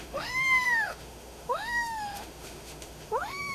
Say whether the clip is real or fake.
fake